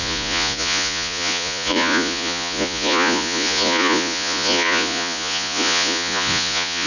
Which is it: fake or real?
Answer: fake